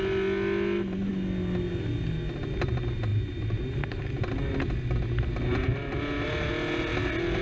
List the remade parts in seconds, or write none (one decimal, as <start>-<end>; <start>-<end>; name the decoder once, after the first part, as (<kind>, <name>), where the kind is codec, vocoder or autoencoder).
none